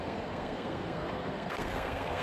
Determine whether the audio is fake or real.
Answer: fake